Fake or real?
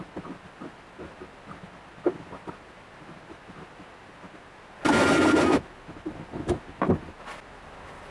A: real